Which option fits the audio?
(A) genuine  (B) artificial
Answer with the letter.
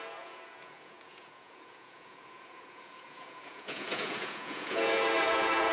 B